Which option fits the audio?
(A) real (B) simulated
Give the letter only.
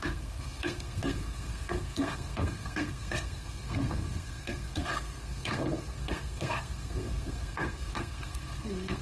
B